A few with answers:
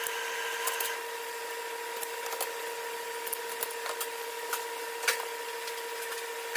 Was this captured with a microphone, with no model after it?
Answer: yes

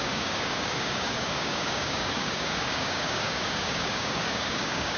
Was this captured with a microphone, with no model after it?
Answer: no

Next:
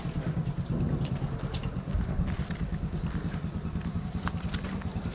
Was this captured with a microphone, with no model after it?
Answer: yes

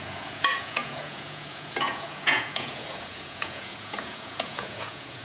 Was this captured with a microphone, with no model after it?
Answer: no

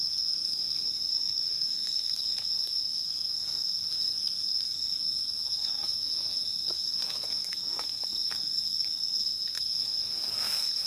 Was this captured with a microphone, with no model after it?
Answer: no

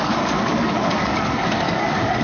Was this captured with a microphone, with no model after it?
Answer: no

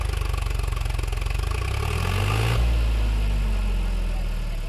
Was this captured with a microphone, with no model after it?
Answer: yes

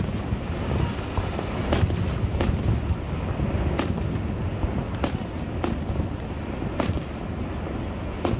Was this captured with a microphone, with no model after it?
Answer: yes